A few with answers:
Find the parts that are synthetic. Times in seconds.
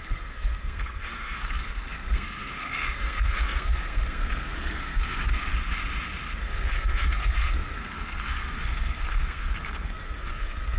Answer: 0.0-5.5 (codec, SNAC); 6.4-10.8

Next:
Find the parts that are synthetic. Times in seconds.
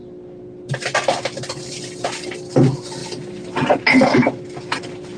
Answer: none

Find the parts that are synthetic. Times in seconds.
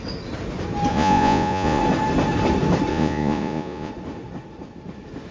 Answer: 0.9-1.8 (vocoder, Vocos); 2.9-3.9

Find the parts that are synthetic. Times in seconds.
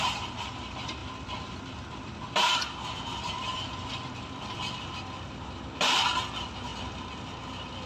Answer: none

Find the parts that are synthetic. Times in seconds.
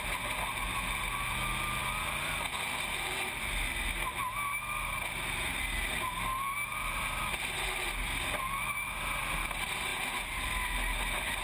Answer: none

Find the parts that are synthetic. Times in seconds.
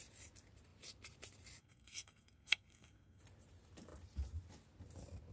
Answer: 1.6-3.2 (codec, SNAC)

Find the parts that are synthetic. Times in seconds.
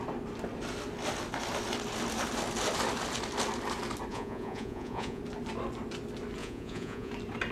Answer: 4.1-5.2 (vocoder, Vocos); 6.4-7.1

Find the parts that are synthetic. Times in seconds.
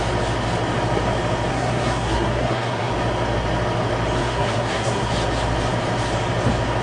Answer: 1.5-2.9 (codec, SNAC); 4.2-5.1